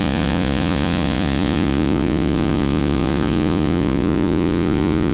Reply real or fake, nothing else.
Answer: fake